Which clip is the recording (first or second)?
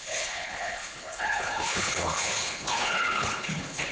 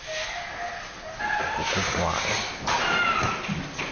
second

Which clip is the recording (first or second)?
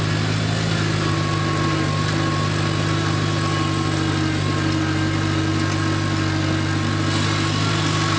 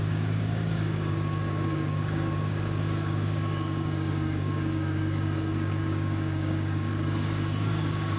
first